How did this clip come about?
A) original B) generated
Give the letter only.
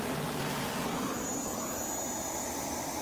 A